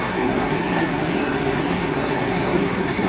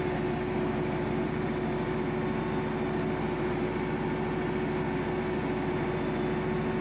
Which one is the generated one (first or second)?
first